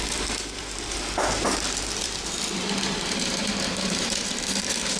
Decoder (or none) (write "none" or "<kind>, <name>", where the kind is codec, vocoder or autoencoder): vocoder, BigVGAN v2